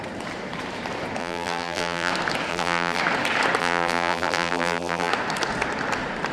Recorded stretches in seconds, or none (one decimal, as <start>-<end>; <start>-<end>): 0.0-1.2; 2.1-2.5; 3.0-3.6; 5.1-6.3